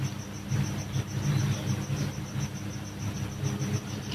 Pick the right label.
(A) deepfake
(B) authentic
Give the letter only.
B